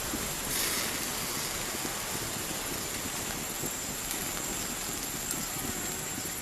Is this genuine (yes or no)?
yes